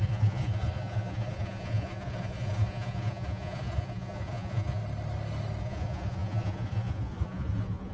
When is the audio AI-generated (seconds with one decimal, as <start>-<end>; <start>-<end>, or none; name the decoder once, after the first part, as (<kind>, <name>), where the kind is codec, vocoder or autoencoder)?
0.0-4.8 (vocoder, Vocos); 5.6-7.9